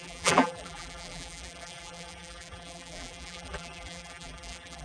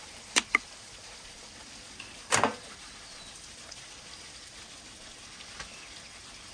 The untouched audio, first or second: second